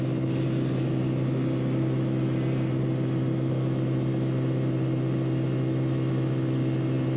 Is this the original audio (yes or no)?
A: yes